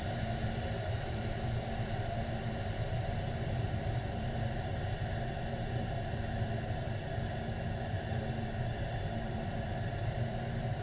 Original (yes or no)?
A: no